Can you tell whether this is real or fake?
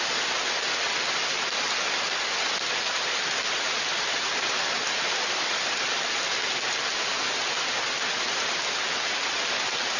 real